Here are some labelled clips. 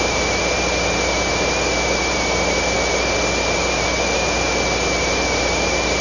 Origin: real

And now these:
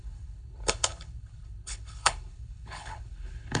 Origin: fake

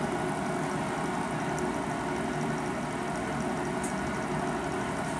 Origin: real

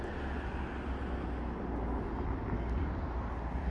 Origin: real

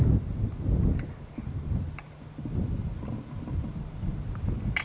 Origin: real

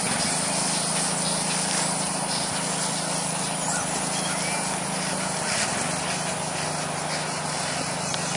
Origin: real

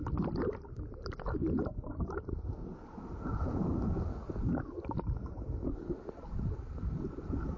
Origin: real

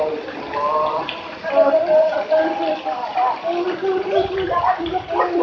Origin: real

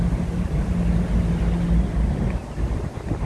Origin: real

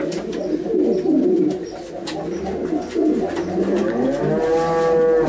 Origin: real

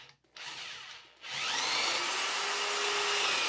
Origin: real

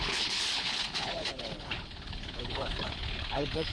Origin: fake